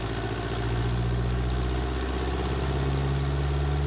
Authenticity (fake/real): real